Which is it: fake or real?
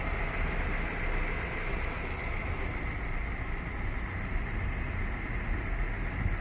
real